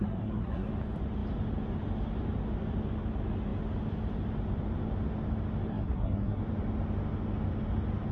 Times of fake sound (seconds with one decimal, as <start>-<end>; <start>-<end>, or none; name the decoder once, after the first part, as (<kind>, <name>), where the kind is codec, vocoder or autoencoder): 0.0-0.7 (codec, SNAC); 5.7-6.4